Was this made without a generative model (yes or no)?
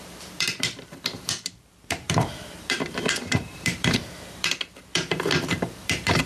no